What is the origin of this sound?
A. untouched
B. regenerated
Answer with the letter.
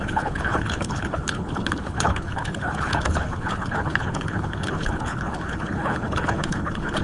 B